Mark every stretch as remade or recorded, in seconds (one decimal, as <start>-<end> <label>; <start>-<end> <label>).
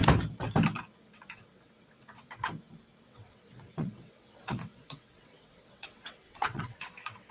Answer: 0.0-1.0 recorded; 1.0-2.5 remade; 2.5-3.0 recorded; 3.0-7.3 remade